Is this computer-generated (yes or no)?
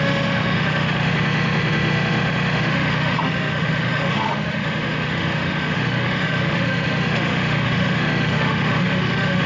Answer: yes